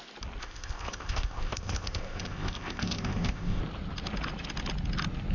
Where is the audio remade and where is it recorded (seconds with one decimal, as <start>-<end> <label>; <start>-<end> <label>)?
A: 0.0-0.4 recorded; 0.4-3.6 remade; 3.6-5.3 recorded